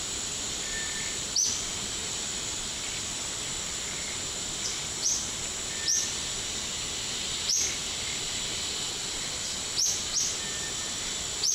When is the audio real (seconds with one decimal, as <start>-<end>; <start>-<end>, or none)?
0.0-11.5